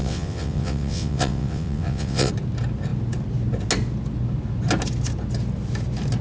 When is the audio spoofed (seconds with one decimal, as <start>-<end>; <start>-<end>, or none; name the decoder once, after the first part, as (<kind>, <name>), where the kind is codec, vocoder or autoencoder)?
0.0-2.3 (vocoder, WaveNeXt)

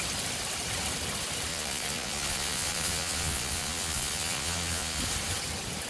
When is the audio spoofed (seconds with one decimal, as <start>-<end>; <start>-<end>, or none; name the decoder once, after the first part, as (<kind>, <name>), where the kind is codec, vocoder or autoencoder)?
1.5-5.0 (vocoder, Vocos)

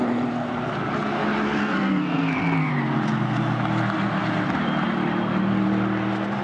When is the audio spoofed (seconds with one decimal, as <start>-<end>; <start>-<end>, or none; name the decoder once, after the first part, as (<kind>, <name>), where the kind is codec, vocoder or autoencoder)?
1.6-2.7 (codec, SNAC)

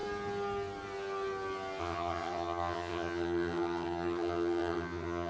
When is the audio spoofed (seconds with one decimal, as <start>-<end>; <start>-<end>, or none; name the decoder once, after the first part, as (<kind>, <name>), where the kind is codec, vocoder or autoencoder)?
1.8-5.3 (vocoder, HiFi-GAN)

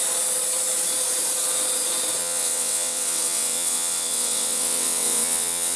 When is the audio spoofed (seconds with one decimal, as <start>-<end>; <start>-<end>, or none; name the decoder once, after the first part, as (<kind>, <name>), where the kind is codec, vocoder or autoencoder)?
2.2-5.8 (vocoder, WaveNeXt)

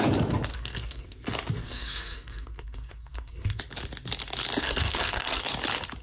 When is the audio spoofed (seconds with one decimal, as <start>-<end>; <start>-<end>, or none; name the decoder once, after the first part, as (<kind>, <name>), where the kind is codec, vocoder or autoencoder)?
0.5-1.2 (codec, SNAC); 1.6-3.6; 4.6-5.4

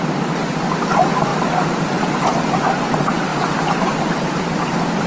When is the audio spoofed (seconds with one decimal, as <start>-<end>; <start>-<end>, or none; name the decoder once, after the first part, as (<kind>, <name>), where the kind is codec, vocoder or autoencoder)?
none